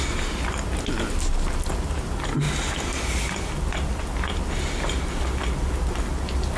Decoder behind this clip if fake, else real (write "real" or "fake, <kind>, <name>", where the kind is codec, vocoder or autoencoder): real